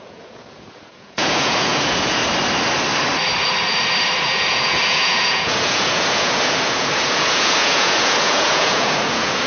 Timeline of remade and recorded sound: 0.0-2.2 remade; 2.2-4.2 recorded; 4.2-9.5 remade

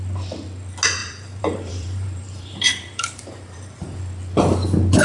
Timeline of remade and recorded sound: 0.0-1.0 recorded; 1.0-4.0 remade; 4.0-5.0 recorded

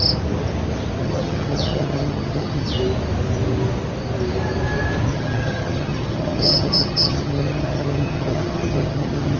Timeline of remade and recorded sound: 0.0-1.0 recorded; 1.0-2.7 remade; 2.7-5.1 recorded; 5.1-9.4 remade

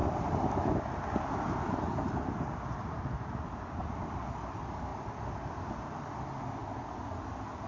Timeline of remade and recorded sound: 0.0-3.0 remade; 3.0-6.6 recorded; 6.6-7.2 remade; 7.2-7.7 recorded

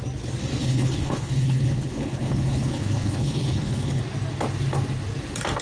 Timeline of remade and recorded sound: 0.0-0.6 recorded; 0.6-4.0 remade; 4.0-5.6 recorded

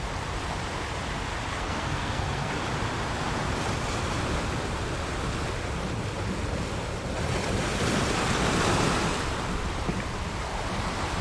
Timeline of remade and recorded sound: 0.0-1.5 recorded; 1.5-2.5 remade; 2.5-11.2 recorded

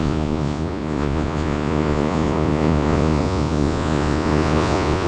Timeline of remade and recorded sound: 0.0-5.1 remade